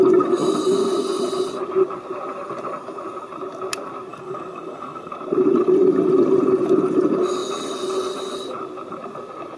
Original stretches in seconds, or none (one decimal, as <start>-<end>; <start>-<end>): 0.0-4.1; 5.1-9.6

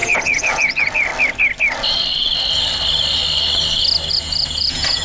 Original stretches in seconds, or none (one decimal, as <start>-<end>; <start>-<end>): 1.1-4.1